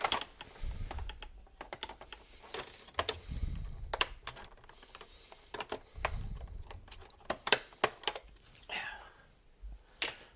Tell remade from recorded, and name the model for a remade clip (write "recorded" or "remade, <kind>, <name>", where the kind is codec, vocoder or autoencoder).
recorded